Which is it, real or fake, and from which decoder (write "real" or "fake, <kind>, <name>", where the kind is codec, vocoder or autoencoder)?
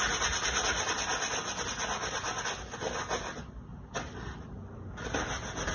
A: real